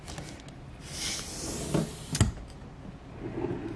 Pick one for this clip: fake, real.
real